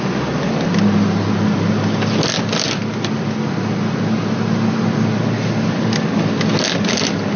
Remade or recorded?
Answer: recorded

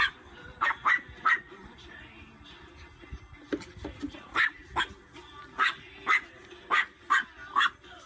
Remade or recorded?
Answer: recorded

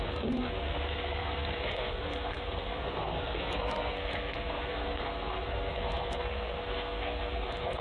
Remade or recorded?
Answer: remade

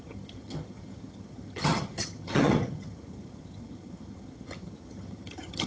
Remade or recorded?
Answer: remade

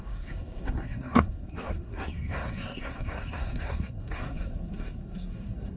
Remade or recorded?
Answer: remade